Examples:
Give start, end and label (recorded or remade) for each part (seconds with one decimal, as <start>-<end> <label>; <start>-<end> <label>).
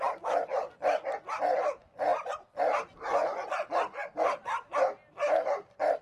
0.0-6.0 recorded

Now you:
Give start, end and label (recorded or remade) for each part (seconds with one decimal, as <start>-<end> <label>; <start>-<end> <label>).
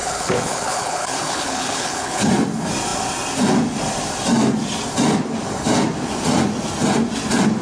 0.0-2.3 remade; 2.3-7.6 recorded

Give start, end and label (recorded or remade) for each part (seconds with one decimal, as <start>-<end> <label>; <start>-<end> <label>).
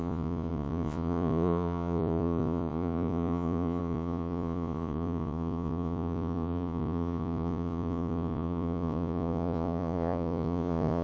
0.0-11.0 remade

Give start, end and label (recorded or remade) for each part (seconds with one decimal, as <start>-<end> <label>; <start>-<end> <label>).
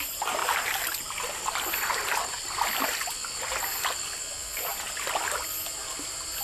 0.0-0.4 recorded; 0.4-1.0 remade; 1.0-6.4 recorded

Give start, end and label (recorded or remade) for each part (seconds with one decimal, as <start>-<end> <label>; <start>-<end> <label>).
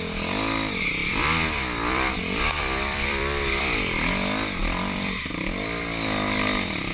0.0-1.0 recorded; 1.0-3.6 remade; 3.6-4.6 recorded; 4.6-5.2 remade; 5.2-6.9 recorded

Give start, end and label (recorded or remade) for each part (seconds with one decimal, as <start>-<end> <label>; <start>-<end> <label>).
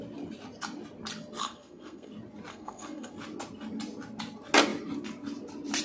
0.0-1.4 recorded; 1.4-2.1 remade; 2.1-2.5 recorded; 2.5-3.1 remade; 3.1-5.8 recorded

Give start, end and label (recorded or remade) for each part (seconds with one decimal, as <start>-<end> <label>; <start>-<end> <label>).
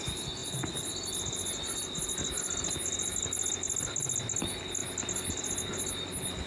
0.0-6.5 recorded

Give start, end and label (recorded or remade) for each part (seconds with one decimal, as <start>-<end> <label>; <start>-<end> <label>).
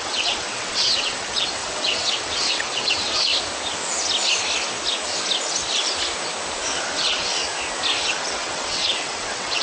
0.0-3.3 remade; 3.3-6.8 recorded; 6.8-7.4 remade; 7.4-8.0 recorded; 8.0-9.6 remade